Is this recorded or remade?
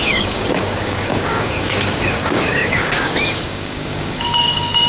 remade